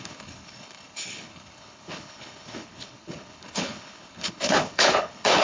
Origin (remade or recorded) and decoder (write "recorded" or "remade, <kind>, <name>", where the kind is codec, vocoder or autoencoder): remade, codec, HILCodec